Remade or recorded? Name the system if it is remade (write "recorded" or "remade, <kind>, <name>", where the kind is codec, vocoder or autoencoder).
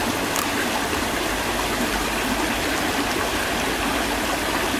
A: recorded